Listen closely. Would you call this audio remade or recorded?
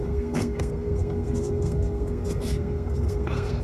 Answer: remade